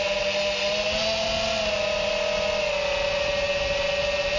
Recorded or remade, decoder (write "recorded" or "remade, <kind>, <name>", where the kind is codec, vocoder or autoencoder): recorded